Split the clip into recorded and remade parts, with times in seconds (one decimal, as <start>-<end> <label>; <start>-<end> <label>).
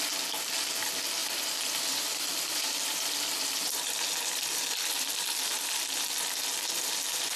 0.0-1.2 recorded; 1.2-5.4 remade; 5.4-7.4 recorded